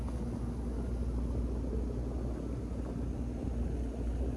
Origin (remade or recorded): recorded